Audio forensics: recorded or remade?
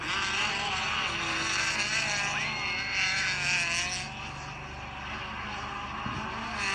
recorded